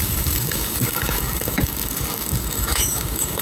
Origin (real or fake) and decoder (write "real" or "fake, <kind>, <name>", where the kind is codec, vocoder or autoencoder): fake, codec, DAC